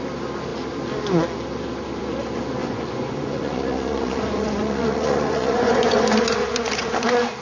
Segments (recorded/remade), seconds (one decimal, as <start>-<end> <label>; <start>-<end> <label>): 0.0-2.6 recorded; 2.6-6.1 remade; 6.1-7.4 recorded